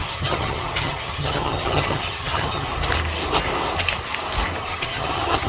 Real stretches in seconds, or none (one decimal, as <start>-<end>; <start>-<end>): 2.7-4.6